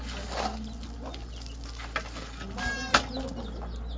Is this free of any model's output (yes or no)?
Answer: yes